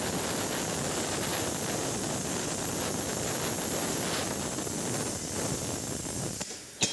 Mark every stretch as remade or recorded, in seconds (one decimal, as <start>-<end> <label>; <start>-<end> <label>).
0.0-6.9 recorded